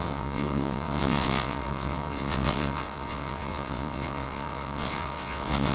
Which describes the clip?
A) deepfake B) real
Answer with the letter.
A